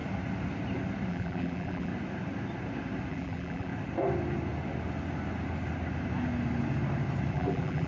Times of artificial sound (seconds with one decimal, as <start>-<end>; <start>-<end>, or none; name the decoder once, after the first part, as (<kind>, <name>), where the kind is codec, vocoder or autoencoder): 1.1-1.9 (vocoder, BigVGAN v2); 3.1-3.7; 7.3-7.9

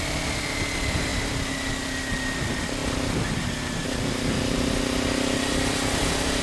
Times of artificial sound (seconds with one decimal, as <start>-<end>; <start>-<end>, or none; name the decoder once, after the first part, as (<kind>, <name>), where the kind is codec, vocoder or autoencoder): 0.0-1.1 (vocoder, BigVGAN v2); 1.7-2.8; 5.4-6.4

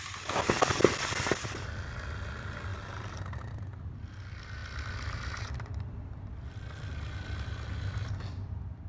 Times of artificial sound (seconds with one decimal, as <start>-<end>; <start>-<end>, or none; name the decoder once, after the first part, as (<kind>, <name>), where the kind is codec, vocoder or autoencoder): none

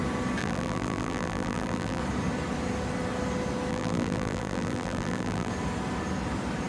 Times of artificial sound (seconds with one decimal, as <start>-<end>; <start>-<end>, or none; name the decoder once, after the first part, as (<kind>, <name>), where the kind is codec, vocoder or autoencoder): 0.4-2.0 (vocoder, BigVGAN v2); 3.7-5.5

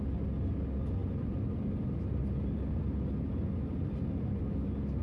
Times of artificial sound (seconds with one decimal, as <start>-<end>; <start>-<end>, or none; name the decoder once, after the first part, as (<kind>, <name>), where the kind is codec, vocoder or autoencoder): none